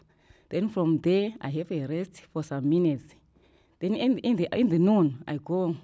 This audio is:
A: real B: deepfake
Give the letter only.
A